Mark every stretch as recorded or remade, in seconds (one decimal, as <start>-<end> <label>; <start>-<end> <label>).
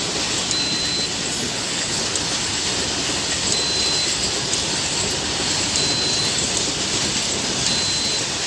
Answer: 0.0-1.4 recorded; 1.4-2.0 remade; 2.0-8.5 recorded